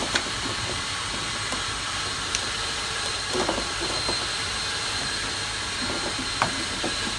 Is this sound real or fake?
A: fake